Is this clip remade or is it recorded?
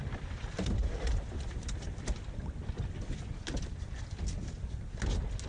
recorded